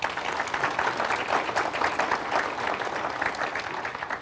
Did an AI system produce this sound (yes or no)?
no